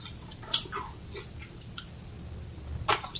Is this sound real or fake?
real